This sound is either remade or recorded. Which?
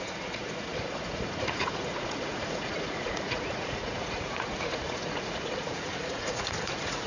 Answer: remade